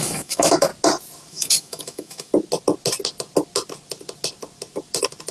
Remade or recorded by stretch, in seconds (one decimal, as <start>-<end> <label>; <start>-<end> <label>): 0.0-0.7 remade; 0.7-1.3 recorded; 1.3-2.3 remade; 2.3-5.3 recorded